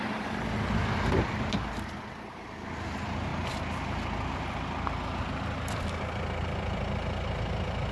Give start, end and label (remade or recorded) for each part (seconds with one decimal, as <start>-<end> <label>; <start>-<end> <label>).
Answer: 0.0-7.9 recorded